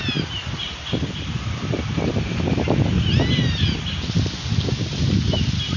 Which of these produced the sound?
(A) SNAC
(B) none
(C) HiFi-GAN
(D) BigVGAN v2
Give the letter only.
B